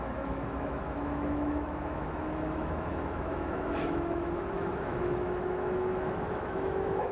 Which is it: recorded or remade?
remade